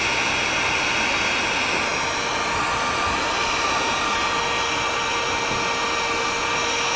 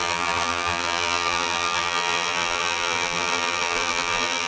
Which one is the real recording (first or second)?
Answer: first